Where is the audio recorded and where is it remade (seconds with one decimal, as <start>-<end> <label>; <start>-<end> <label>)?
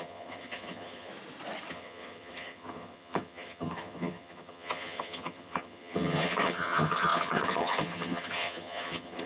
0.0-1.1 remade; 1.1-1.7 recorded; 1.7-9.3 remade